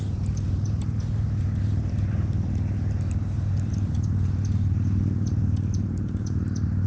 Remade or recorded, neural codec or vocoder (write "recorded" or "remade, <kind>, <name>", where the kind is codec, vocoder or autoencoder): remade, vocoder, BigVGAN v2